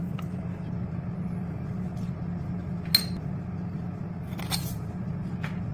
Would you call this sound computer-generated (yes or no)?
yes